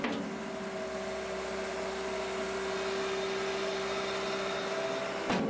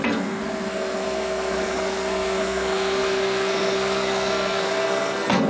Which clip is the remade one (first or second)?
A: second